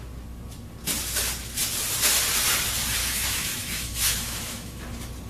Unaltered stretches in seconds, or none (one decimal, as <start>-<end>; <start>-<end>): 0.0-3.0; 4.8-5.3